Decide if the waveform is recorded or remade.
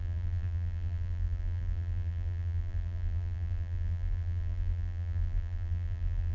remade